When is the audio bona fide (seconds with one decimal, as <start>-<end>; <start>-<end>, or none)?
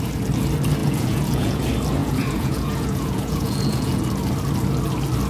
0.0-0.8; 1.6-2.0; 4.0-5.3